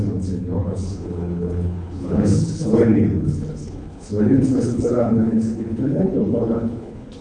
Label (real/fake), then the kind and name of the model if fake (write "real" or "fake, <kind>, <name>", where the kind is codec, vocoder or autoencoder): fake, codec, HILCodec